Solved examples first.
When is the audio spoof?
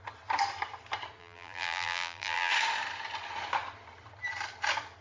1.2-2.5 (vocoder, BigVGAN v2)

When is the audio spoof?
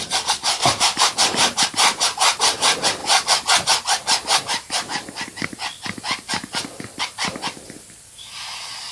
0.0-3.0 (vocoder, BigVGAN v2); 7.0-8.9